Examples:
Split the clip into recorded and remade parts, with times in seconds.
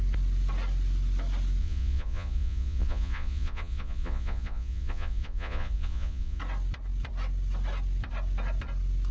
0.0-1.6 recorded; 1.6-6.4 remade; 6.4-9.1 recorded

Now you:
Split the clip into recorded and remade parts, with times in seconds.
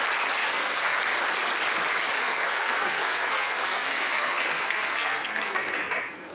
0.0-0.4 recorded; 0.4-1.0 remade; 1.0-2.2 recorded; 2.2-6.3 remade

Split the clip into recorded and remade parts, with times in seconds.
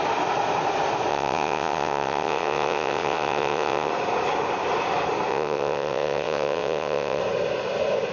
0.0-1.1 recorded; 1.1-3.9 remade; 3.9-5.3 recorded; 5.3-7.2 remade; 7.2-8.1 recorded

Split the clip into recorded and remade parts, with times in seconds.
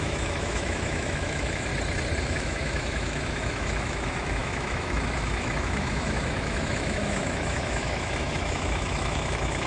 0.0-1.7 remade; 1.7-2.2 recorded; 2.2-9.7 remade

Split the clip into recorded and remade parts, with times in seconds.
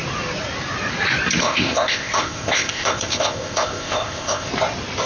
0.0-1.4 recorded; 1.4-4.5 remade; 4.5-5.1 recorded